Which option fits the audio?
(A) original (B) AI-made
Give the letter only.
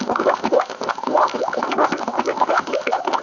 B